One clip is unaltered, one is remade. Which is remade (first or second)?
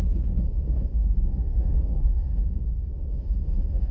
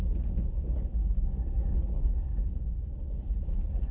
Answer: first